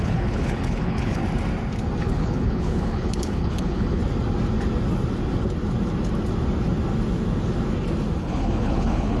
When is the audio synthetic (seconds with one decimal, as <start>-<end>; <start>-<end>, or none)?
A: 0.0-1.2; 2.0-4.0; 8.2-9.2